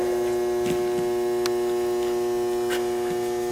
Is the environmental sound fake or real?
real